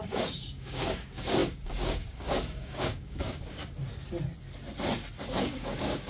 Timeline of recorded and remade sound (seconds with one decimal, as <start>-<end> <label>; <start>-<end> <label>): 0.0-3.6 remade; 3.6-5.4 recorded; 5.4-6.1 remade